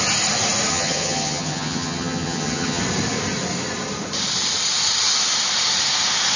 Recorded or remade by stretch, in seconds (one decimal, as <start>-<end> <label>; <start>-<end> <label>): 0.0-0.7 recorded; 0.7-2.8 remade; 2.8-6.4 recorded